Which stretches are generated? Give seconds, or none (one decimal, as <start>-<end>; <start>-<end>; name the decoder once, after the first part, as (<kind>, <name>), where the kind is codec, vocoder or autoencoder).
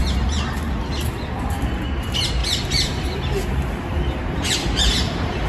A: none